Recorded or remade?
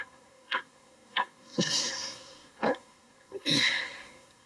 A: remade